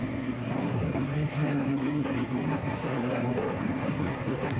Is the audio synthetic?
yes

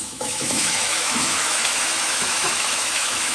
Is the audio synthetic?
yes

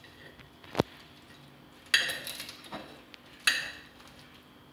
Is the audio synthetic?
no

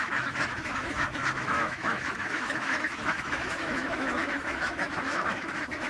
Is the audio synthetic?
yes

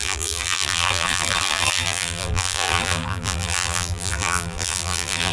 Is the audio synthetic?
yes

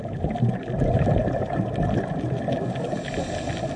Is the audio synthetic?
no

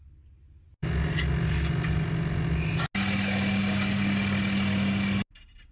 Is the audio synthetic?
no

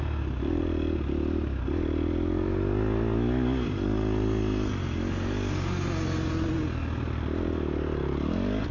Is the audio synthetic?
no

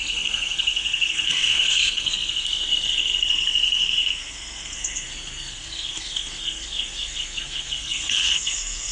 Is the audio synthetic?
yes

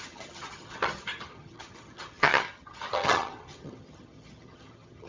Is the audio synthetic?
yes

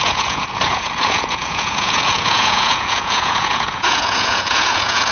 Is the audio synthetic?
yes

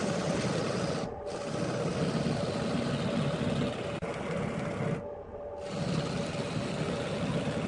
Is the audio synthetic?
no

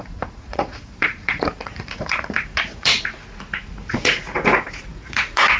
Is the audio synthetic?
yes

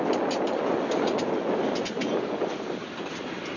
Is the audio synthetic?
no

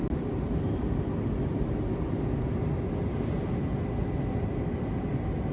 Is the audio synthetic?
no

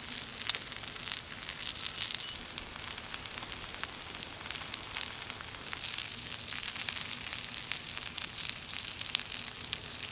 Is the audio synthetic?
no